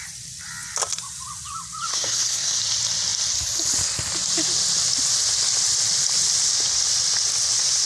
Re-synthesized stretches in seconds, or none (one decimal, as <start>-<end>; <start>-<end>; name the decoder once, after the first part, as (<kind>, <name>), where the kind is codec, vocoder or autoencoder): 1.9-2.6 (codec, SNAC)